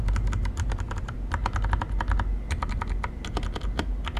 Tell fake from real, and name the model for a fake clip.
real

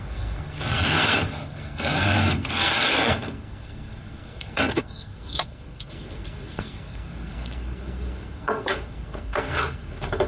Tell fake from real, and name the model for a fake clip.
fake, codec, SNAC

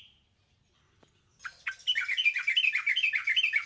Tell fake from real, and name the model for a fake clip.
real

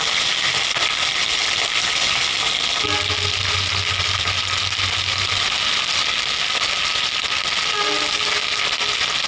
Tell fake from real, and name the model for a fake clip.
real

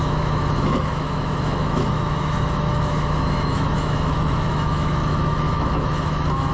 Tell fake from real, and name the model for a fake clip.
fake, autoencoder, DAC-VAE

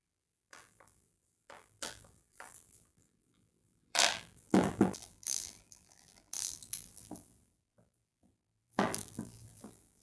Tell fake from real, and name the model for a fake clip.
fake, vocoder, BigVGAN v2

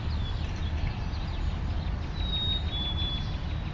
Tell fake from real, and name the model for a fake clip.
real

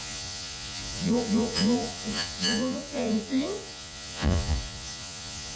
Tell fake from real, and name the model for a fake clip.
fake, vocoder, Vocos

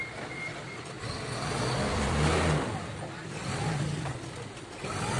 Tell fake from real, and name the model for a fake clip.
real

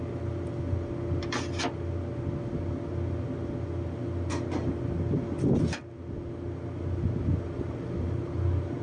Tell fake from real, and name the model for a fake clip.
real